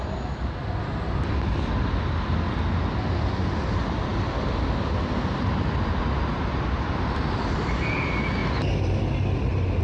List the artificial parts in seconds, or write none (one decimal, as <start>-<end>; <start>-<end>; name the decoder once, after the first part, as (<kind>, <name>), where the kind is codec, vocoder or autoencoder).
none

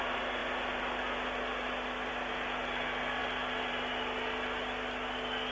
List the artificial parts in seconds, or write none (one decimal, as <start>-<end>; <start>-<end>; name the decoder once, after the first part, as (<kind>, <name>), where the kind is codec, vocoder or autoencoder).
none